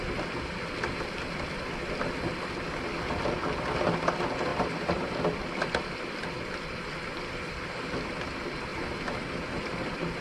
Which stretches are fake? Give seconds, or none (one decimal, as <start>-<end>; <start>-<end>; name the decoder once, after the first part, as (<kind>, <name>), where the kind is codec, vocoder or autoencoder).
4.5-5.2 (vocoder, BigVGAN v2)